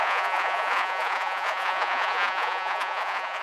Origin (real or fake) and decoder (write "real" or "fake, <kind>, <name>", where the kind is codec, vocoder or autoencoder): fake, vocoder, Vocos